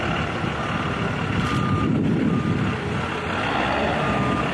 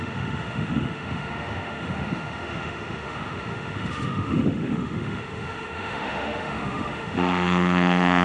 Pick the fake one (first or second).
second